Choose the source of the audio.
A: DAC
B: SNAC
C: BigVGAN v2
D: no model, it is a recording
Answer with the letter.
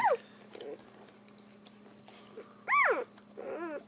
D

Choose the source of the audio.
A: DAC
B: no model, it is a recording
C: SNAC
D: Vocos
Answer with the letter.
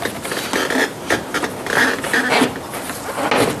B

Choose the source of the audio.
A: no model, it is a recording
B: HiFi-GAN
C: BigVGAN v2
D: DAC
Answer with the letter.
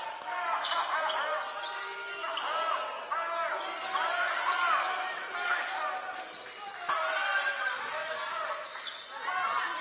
A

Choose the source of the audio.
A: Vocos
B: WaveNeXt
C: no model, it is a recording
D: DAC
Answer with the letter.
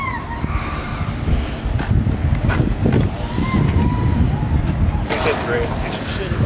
C